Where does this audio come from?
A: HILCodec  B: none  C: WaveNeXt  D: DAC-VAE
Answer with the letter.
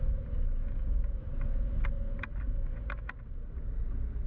B